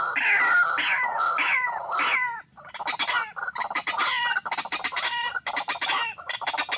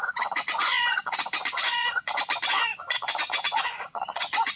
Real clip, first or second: first